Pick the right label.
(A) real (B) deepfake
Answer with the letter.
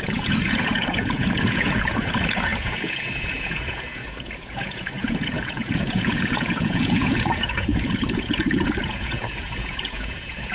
B